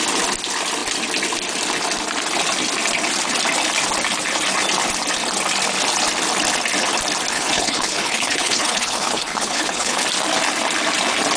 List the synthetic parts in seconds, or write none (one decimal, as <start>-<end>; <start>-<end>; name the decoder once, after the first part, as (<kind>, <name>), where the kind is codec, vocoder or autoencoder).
7.3-10.0 (codec, HILCodec)